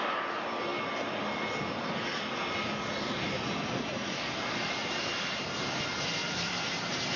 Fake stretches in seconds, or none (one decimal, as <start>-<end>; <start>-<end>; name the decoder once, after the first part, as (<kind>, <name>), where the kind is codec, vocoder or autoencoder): 4.0-5.8 (vocoder, BigVGAN v2); 6.2-7.2